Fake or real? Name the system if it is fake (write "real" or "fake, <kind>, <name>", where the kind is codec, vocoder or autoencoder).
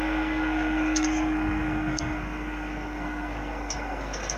fake, codec, SNAC